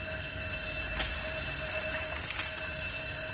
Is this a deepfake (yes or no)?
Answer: no